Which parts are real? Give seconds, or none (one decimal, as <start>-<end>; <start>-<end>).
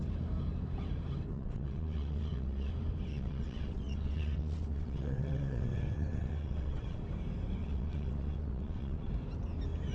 0.0-1.3; 2.7-3.1; 7.0-7.6; 9.1-9.9